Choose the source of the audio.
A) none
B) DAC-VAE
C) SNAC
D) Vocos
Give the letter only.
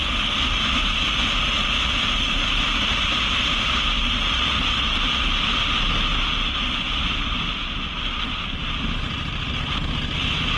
A